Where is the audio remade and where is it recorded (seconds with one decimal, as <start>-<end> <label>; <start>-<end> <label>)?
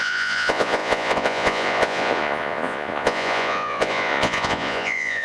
0.0-5.2 remade